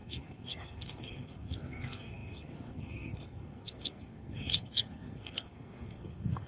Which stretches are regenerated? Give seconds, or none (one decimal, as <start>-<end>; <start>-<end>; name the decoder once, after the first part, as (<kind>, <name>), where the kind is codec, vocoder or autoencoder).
0.0-6.5 (codec, SNAC)